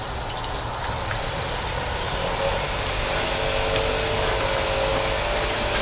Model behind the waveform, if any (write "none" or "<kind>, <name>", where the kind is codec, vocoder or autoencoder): none